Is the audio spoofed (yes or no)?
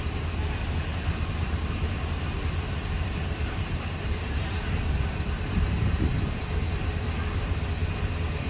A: yes